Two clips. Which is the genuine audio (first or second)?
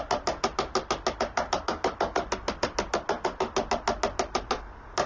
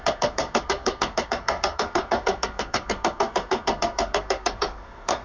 first